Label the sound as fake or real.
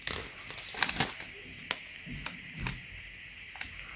real